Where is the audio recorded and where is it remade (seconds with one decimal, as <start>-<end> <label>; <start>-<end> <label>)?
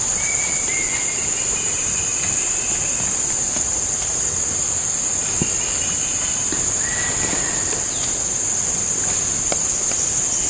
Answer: 0.0-10.5 recorded